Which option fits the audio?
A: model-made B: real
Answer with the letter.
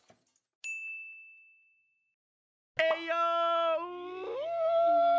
B